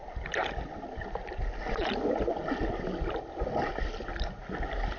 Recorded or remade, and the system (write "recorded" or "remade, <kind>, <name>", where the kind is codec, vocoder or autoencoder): recorded